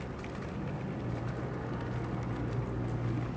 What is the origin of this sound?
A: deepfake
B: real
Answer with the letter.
B